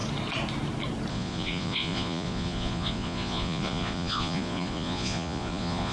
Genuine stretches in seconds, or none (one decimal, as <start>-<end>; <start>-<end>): 0.0-1.1